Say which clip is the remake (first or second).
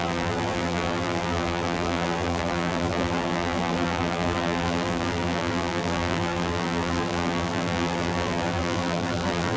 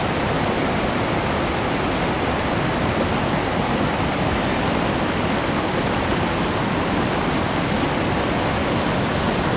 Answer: first